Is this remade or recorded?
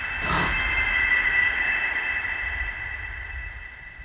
recorded